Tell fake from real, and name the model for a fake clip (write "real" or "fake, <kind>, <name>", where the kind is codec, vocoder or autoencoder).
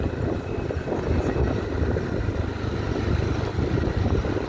real